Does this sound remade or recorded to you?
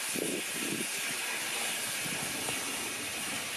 recorded